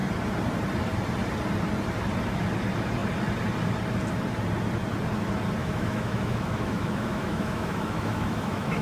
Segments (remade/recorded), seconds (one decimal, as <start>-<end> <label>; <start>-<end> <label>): 0.0-5.6 recorded; 5.6-8.8 remade

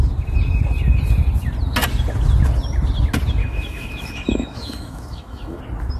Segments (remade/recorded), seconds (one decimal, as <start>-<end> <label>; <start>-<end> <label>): 0.0-3.4 recorded; 3.4-5.6 remade; 5.6-6.0 recorded